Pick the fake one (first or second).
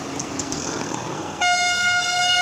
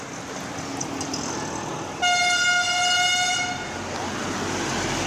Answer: first